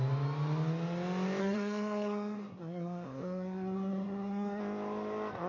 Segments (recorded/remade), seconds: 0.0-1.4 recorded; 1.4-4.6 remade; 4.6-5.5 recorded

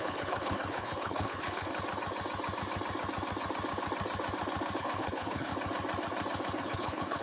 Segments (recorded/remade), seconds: 0.0-1.7 remade; 1.7-4.8 recorded; 4.8-5.5 remade; 5.5-6.6 recorded; 6.6-7.2 remade

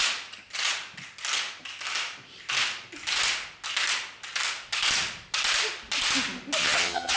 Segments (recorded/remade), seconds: 0.0-6.6 recorded; 6.6-7.2 remade

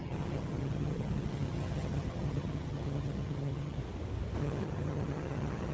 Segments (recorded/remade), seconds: 0.0-3.8 remade; 3.8-4.4 recorded; 4.4-5.7 remade

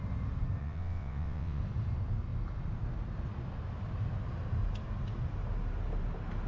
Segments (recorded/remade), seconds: 0.0-0.6 recorded; 0.6-1.6 remade; 1.6-6.5 recorded

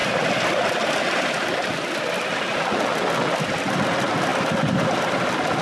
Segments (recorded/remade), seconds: 0.0-3.4 recorded; 3.4-5.6 remade